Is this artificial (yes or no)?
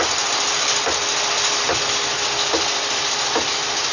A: no